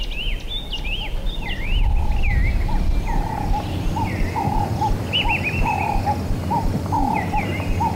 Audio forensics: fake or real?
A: real